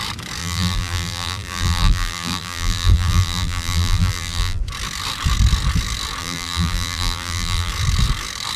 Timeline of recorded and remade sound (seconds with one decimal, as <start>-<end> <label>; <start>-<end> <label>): 0.0-0.4 recorded; 0.4-4.6 remade; 4.6-6.2 recorded; 6.2-7.7 remade; 7.7-8.6 recorded